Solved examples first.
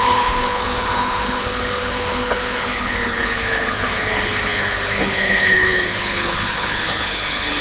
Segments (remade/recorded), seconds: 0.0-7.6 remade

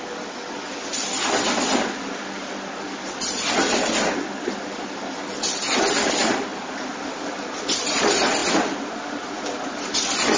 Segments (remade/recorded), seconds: 0.0-10.4 recorded

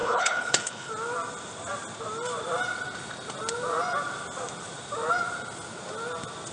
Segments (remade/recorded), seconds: 0.0-0.9 remade; 0.9-6.5 recorded

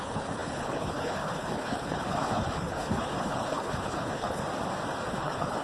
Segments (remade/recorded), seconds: 0.0-4.4 remade; 4.4-5.1 recorded; 5.1-5.6 remade

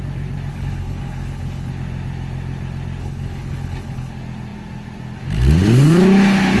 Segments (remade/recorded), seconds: 0.0-0.5 recorded; 0.5-1.7 remade; 1.7-3.0 recorded; 3.0-4.1 remade; 4.1-6.6 recorded

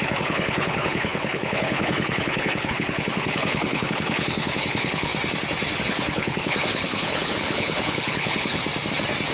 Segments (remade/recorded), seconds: 0.0-5.1 remade; 5.1-5.8 recorded; 5.8-8.6 remade; 8.6-9.3 recorded

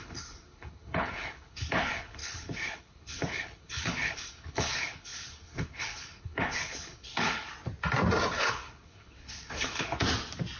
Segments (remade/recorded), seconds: 0.0-7.5 remade; 7.5-8.3 recorded; 8.3-10.0 remade; 10.0-10.6 recorded

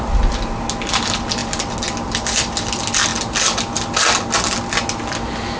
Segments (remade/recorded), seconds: 0.0-5.6 recorded